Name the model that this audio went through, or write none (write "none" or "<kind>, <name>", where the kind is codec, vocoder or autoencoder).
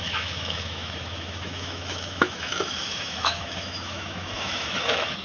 autoencoder, DAC-VAE